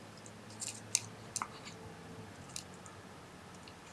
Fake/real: real